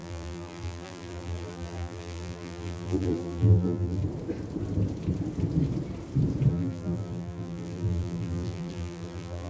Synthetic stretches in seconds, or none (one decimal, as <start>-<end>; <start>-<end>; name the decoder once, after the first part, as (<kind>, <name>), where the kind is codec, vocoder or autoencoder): 0.0-4.0 (vocoder, BigVGAN v2); 6.5-9.5